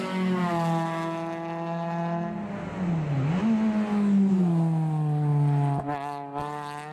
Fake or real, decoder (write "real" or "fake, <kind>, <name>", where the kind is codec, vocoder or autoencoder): real